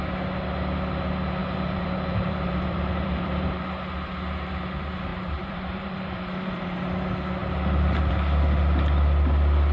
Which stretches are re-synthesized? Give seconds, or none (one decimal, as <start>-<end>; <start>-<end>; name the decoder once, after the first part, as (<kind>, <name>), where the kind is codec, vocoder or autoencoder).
1.4-3.8 (vocoder, BigVGAN v2); 5.1-6.9